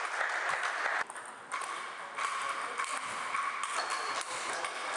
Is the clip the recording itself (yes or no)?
yes